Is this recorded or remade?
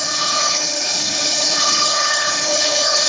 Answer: remade